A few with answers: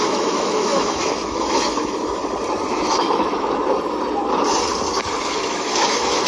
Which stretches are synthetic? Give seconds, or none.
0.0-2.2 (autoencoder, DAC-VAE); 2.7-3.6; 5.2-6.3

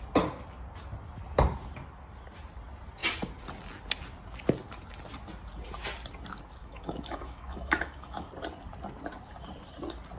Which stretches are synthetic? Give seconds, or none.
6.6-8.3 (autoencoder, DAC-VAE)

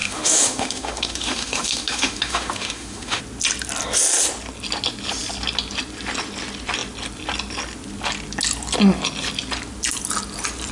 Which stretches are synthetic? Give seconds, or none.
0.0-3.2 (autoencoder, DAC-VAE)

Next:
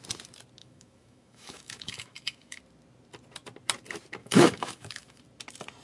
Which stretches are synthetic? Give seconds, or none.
0.6-2.6 (autoencoder, DAC-VAE); 4.2-5.2

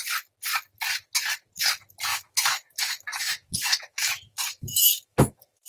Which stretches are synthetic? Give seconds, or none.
2.1-5.7 (autoencoder, DAC-VAE)

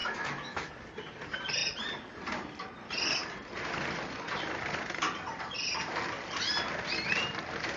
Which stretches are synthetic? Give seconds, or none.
0.0-0.7 (autoencoder, DAC-VAE)

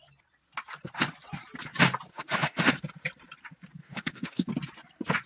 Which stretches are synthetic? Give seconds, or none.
2.1-2.7 (autoencoder, DAC-VAE); 3.8-4.5

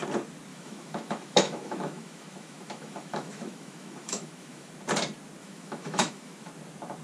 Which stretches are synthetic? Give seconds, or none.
0.5-4.7 (autoencoder, DAC-VAE); 5.4-6.5